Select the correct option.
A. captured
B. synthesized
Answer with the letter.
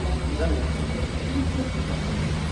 A